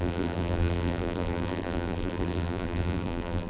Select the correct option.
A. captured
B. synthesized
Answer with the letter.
B